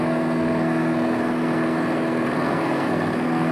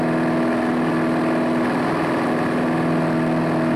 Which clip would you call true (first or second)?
second